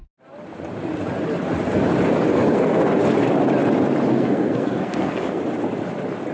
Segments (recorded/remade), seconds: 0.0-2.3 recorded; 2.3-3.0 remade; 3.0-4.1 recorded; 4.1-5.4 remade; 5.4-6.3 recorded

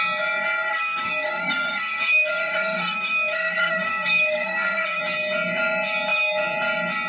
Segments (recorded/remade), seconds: 0.0-0.7 recorded; 0.7-5.0 remade; 5.0-7.1 recorded

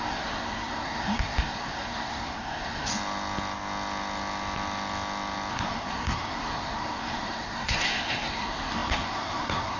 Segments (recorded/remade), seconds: 0.0-2.9 remade; 2.9-5.5 recorded; 5.5-9.8 remade

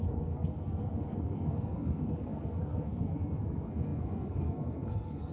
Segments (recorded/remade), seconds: 0.0-5.3 remade

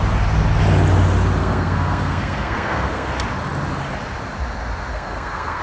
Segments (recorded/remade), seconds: 0.0-1.4 recorded; 1.4-3.1 remade; 3.1-4.9 recorded; 4.9-5.6 remade